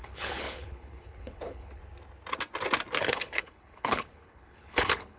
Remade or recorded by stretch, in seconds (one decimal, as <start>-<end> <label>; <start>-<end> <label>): 0.0-1.8 remade; 1.8-3.0 recorded; 3.0-5.2 remade